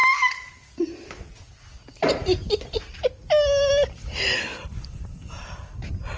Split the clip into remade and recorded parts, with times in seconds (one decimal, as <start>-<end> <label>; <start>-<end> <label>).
0.0-6.2 recorded